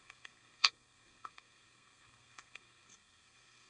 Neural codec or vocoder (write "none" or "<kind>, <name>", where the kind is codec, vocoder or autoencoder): codec, SNAC